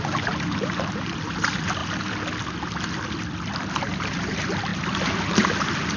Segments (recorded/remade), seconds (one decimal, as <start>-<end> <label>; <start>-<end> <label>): 0.0-1.8 remade; 1.8-3.5 recorded; 3.5-4.7 remade; 4.7-5.3 recorded; 5.3-6.0 remade